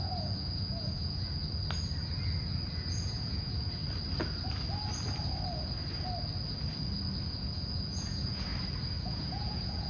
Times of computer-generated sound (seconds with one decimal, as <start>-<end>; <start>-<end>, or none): 0.0-1.4; 2.8-3.8; 7.3-8.5; 9.0-9.9